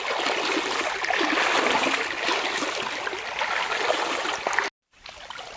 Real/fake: real